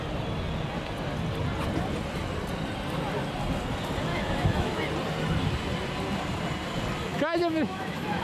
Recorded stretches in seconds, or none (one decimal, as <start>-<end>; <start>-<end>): 0.0-4.1; 4.9-7.1